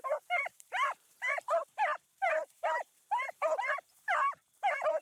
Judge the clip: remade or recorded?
remade